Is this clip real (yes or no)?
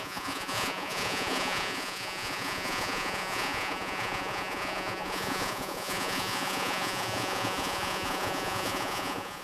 no